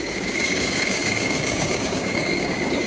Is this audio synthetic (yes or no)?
yes